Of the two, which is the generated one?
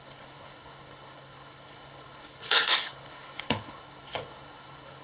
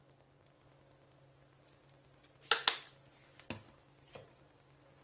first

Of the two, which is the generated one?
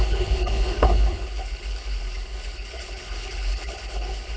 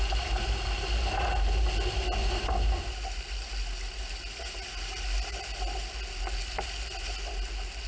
first